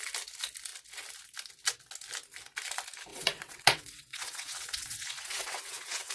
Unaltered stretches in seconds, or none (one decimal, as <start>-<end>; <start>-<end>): 0.0-3.1